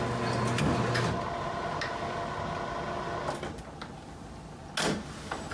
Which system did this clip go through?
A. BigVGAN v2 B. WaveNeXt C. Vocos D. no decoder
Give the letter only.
D